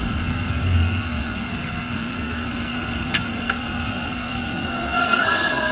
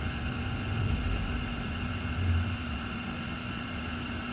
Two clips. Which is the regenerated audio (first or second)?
first